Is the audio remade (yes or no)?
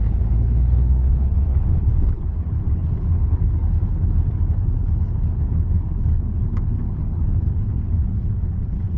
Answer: yes